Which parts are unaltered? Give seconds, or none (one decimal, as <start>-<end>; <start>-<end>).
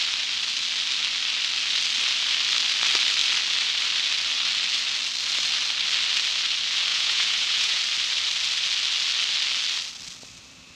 0.0-6.9; 7.8-10.8